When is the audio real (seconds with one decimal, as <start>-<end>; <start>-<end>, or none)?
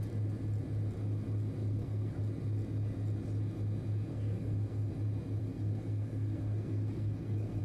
0.0-1.6; 2.2-4.1; 4.9-5.4